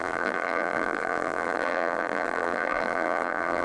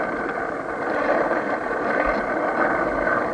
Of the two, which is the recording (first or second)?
second